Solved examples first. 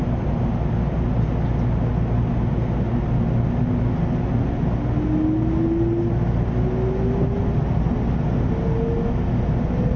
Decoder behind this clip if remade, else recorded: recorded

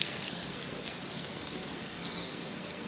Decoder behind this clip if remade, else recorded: remade, codec, SNAC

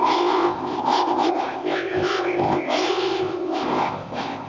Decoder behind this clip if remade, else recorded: remade, codec, ZipCodec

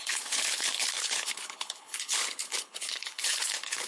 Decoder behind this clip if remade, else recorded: remade, codec, HILCodec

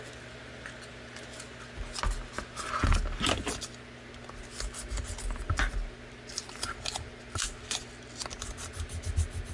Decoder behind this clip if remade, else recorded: recorded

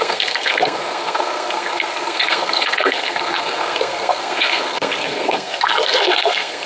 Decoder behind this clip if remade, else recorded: remade, codec, SNAC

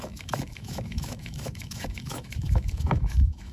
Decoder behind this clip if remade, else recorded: remade, autoencoder, DAC-VAE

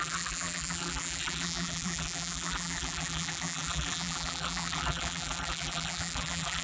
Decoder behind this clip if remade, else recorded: remade, vocoder, BigVGAN v2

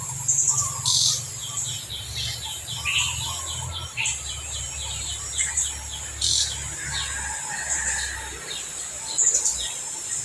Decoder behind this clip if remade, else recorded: recorded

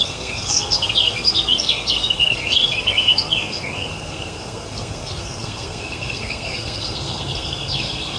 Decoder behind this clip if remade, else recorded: remade, codec, SNAC